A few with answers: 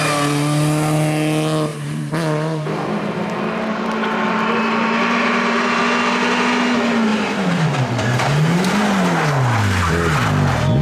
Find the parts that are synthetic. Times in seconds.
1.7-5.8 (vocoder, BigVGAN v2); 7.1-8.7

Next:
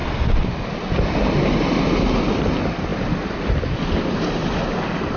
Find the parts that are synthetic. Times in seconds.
none